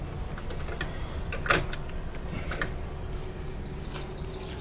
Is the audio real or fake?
real